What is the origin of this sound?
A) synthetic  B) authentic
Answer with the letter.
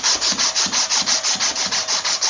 B